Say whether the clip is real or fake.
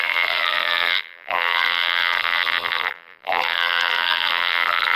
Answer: fake